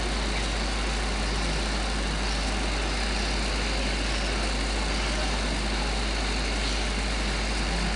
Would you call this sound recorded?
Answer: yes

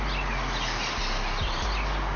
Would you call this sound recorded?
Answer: yes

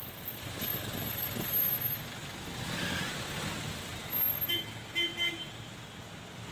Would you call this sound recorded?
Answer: yes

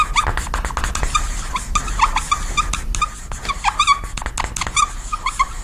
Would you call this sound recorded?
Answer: yes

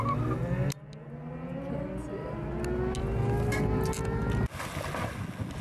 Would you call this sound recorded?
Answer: yes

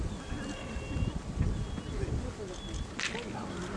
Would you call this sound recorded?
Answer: yes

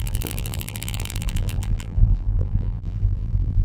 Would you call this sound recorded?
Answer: no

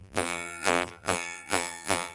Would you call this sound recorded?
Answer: no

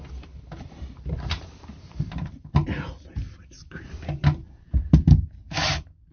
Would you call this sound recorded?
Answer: no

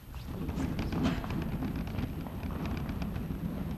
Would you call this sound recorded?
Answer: yes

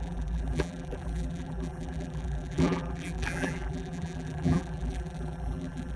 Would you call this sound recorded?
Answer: no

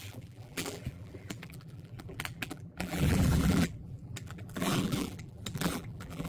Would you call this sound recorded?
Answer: no